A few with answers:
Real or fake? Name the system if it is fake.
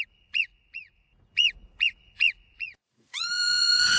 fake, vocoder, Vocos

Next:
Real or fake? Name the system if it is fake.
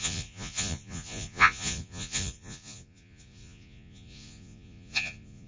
fake, vocoder, Vocos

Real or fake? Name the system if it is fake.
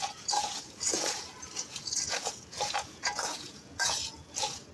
fake, vocoder, Vocos